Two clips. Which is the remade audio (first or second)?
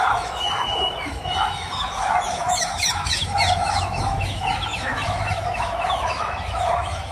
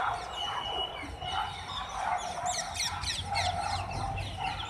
first